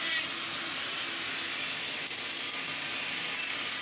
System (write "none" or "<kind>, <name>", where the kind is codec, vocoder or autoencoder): none